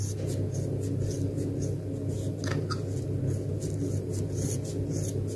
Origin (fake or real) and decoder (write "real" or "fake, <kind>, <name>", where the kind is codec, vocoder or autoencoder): real